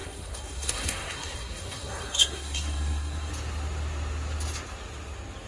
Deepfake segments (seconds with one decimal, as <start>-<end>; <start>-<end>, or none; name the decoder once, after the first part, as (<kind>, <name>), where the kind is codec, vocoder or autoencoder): 0.0-3.3 (codec, SNAC)